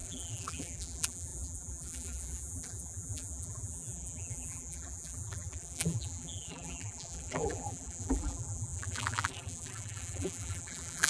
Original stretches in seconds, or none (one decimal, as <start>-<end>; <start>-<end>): none